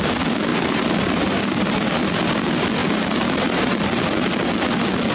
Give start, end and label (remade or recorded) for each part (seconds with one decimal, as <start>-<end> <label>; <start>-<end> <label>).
0.0-0.5 recorded; 0.5-2.1 remade; 2.1-2.8 recorded; 2.8-4.0 remade; 4.0-5.1 recorded